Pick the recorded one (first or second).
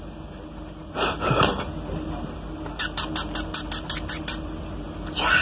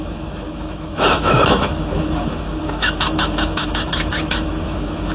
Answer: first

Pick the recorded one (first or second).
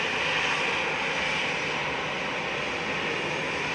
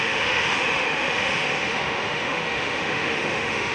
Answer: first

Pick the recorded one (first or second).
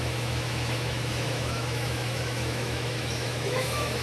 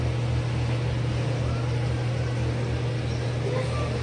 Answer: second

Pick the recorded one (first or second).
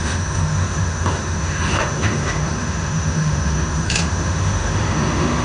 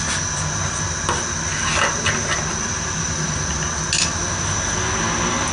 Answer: second